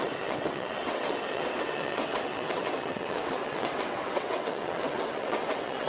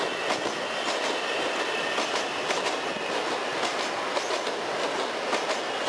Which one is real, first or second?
second